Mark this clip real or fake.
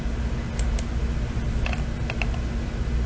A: real